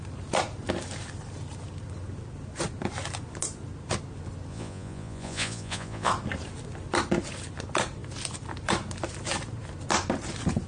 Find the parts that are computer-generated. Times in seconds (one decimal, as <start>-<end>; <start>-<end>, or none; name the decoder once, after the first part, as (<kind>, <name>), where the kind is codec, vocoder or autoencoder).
4.5-6.1 (vocoder, Vocos)